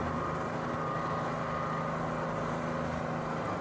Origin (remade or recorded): recorded